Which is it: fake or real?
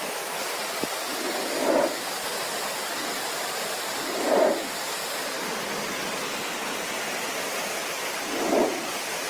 real